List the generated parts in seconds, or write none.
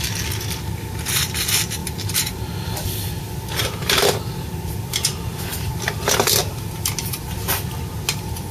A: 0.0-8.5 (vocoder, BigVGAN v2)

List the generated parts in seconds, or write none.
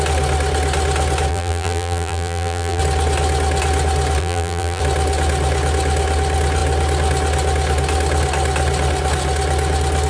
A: 1.3-2.8 (vocoder, BigVGAN v2); 4.2-4.8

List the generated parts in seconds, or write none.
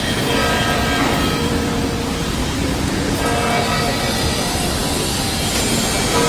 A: 0.4-1.7 (vocoder, BigVGAN v2); 2.4-3.1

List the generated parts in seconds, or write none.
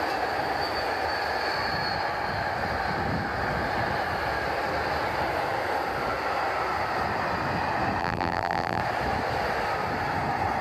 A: 8.0-8.8 (vocoder, BigVGAN v2)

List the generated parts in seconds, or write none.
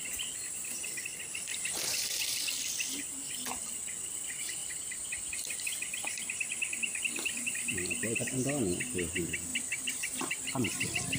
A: 1.5-2.4 (vocoder, BigVGAN v2); 4.6-5.2; 9.5-10.2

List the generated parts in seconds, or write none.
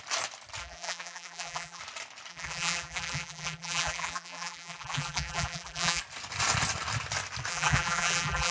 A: 0.6-1.8 (vocoder, BigVGAN v2); 2.3-6.0; 7.5-8.5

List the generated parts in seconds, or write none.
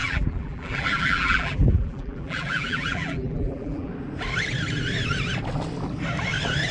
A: 0.0-3.9 (vocoder, BigVGAN v2)